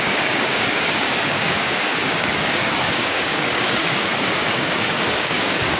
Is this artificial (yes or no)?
yes